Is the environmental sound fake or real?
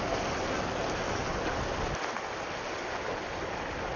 real